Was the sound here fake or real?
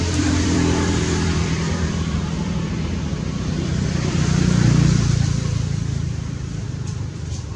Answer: fake